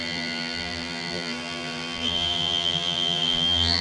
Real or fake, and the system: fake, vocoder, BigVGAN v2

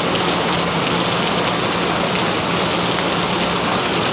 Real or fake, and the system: real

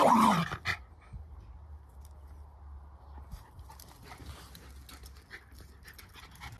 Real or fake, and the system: real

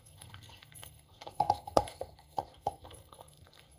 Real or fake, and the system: fake, codec, SNAC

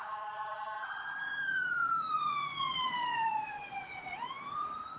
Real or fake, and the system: fake, vocoder, Vocos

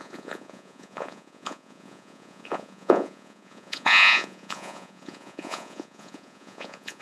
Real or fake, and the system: fake, vocoder, Vocos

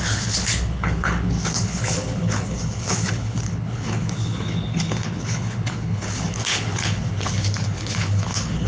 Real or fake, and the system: fake, codec, HILCodec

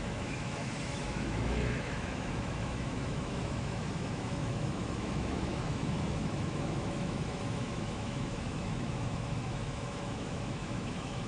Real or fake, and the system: fake, autoencoder, DAC-VAE